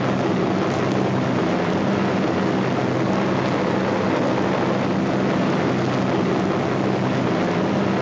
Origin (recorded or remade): recorded